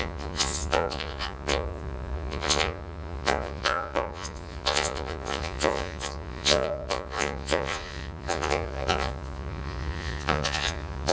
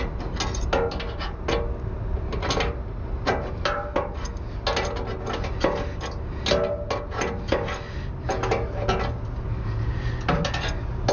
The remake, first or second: first